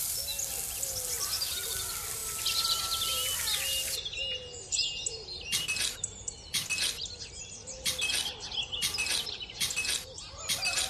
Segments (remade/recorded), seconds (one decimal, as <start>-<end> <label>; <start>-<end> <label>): 0.0-10.9 recorded